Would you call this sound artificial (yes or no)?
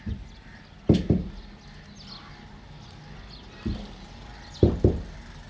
no